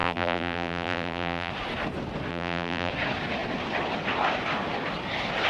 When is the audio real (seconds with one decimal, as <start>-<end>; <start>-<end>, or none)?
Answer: 1.5-2.3; 2.9-5.5